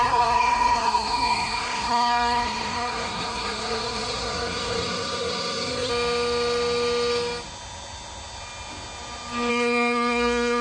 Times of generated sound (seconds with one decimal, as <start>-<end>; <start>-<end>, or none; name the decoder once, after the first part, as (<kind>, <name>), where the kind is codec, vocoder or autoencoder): 0.0-5.9 (codec, SNAC); 9.5-10.6